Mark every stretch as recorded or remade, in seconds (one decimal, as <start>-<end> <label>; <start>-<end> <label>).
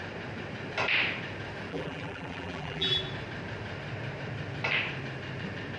0.0-1.7 recorded; 1.7-3.0 remade; 3.0-5.8 recorded